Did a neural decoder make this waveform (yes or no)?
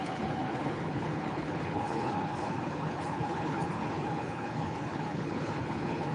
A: yes